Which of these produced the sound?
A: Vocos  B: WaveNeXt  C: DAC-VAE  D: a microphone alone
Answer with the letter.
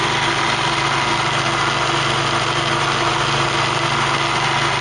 D